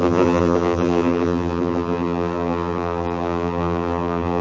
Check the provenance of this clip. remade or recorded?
remade